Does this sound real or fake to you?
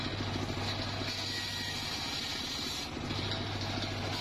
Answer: real